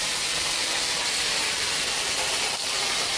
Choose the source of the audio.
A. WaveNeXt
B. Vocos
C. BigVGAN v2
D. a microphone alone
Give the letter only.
D